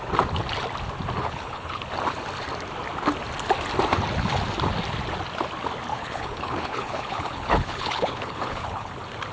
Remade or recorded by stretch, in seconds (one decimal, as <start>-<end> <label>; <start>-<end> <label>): 0.0-1.2 recorded; 1.2-1.8 remade; 1.8-5.9 recorded; 5.9-8.9 remade; 8.9-9.3 recorded